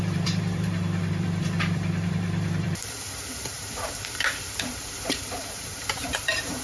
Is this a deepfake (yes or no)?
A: yes